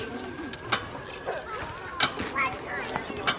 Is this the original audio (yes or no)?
yes